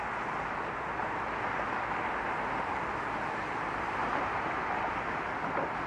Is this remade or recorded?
recorded